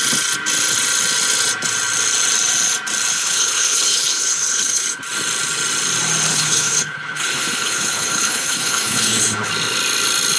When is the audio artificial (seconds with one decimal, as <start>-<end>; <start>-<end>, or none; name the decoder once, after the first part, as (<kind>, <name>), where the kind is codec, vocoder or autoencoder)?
3.1-5.0 (codec, HILCodec); 6.3-9.5